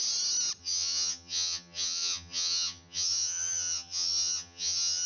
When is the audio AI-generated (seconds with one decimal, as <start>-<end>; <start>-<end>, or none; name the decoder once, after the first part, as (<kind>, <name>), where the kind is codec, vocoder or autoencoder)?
0.6-5.1 (vocoder, HiFi-GAN)